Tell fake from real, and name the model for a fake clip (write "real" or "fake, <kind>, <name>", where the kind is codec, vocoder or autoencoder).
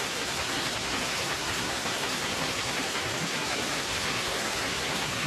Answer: fake, codec, SNAC